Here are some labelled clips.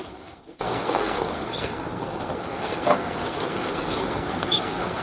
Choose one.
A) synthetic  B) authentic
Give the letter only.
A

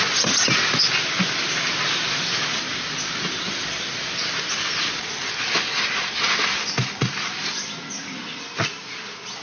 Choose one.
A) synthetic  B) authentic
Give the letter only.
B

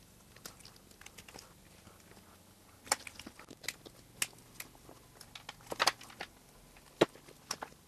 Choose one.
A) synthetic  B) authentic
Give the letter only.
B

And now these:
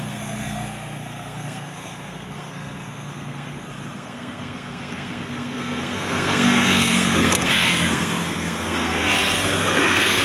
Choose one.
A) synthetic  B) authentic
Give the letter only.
A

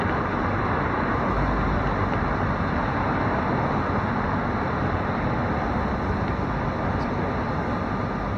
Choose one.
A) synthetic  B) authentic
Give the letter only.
B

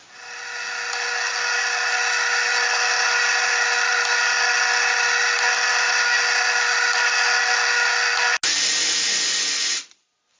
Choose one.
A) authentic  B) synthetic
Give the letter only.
A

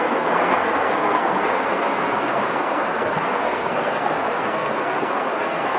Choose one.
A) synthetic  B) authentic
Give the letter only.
A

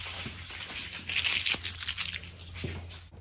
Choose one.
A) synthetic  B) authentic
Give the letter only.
B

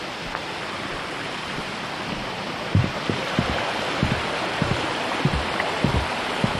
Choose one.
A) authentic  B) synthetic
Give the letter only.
A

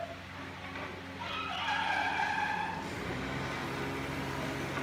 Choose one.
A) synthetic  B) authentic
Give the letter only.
B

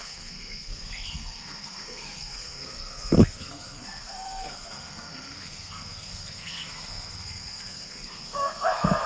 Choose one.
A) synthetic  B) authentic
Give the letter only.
A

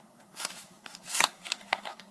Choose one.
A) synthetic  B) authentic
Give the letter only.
A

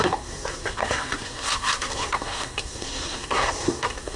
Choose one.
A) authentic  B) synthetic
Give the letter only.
B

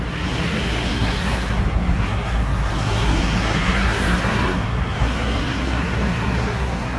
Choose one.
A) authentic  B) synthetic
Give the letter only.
B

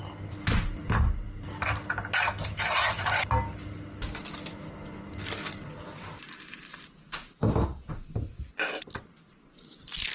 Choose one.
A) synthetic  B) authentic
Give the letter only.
B